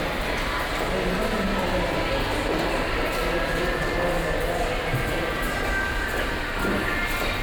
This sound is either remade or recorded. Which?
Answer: recorded